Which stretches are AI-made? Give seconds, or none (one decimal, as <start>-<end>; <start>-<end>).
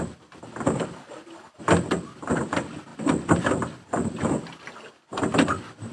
none